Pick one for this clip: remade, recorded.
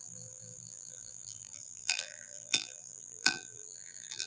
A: remade